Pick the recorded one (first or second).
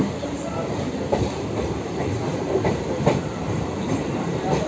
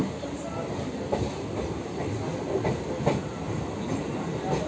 second